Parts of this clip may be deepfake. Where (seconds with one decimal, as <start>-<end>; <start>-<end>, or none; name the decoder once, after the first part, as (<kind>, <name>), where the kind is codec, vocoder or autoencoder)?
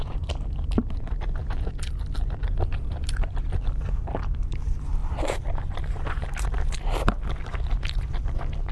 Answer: 0.0-8.7 (vocoder, BigVGAN v2)